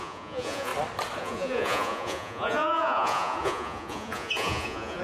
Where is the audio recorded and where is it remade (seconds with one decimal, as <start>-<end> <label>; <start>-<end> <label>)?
0.0-0.7 remade; 0.7-1.2 recorded; 1.2-5.0 remade